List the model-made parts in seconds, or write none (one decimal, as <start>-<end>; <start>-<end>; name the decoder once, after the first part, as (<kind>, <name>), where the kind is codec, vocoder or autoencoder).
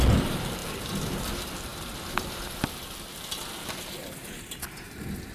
none